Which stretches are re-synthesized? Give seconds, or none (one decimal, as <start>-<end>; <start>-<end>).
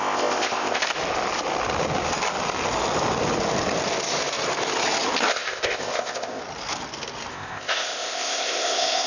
0.0-0.8; 5.3-6.4; 7.3-9.1